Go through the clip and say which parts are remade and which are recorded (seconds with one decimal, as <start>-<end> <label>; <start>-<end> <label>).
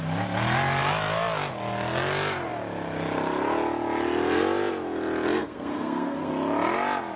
0.0-5.4 recorded; 5.4-6.3 remade; 6.3-7.2 recorded